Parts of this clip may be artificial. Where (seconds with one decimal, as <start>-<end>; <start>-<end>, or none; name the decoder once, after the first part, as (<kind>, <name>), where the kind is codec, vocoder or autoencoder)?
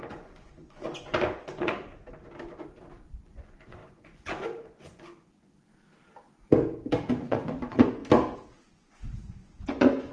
0.0-2.0 (vocoder, Vocos); 3.1-5.7; 7.1-8.0; 8.6-10.1